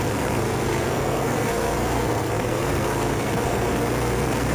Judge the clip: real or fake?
fake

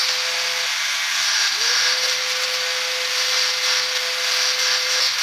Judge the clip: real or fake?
real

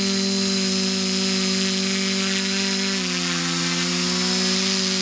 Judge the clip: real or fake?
real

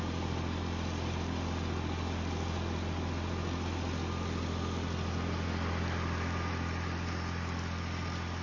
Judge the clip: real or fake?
real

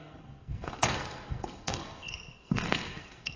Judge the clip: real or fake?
fake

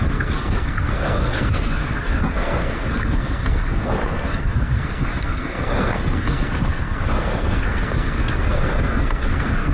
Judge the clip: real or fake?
fake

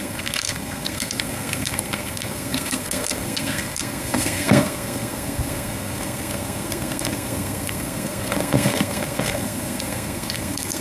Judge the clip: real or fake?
fake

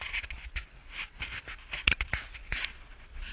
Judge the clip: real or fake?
real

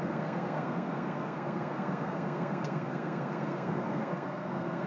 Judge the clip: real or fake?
fake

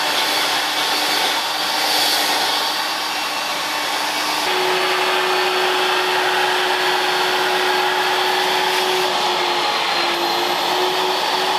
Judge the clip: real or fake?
real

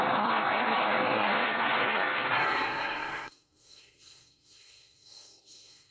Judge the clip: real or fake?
fake